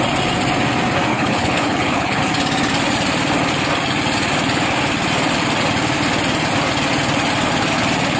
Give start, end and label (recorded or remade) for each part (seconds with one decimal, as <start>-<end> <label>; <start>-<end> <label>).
0.0-1.1 recorded; 1.1-2.2 remade; 2.2-8.2 recorded